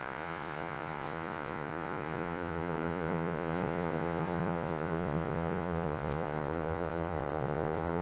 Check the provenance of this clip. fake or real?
fake